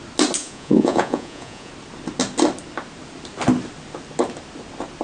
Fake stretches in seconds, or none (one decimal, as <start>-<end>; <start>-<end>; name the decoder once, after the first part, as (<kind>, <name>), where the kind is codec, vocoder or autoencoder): 0.4-1.7 (vocoder, Vocos)